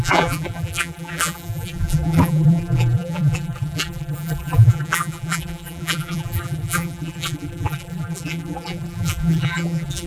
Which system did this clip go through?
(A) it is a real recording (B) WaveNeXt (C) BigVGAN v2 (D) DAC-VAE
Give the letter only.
C